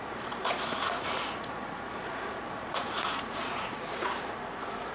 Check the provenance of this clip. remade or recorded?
remade